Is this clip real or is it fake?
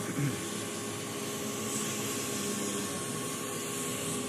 real